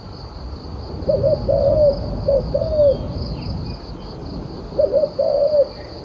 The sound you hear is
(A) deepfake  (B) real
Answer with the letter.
B